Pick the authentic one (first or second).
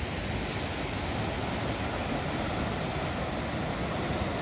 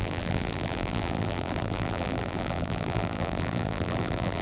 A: first